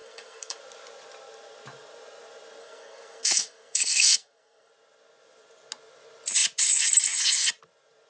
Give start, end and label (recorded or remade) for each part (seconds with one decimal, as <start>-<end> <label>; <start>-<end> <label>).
0.0-0.6 remade; 0.6-2.6 recorded; 2.6-4.7 remade; 4.7-8.1 recorded